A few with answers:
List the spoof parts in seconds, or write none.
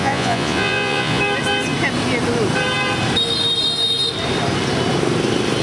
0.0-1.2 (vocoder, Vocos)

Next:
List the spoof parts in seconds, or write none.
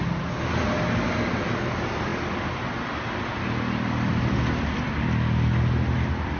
none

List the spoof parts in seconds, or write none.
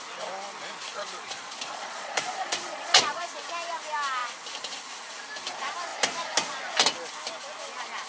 0.9-3.2 (vocoder, Vocos)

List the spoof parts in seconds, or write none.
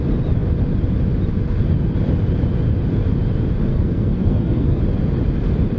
3.7-4.8 (codec, SNAC)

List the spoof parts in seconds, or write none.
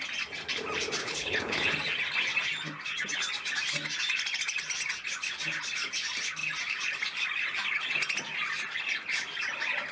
1.0-1.7 (codec, HILCodec)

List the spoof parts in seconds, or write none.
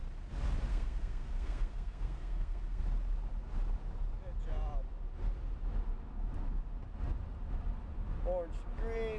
0.7-2.8 (codec, SNAC)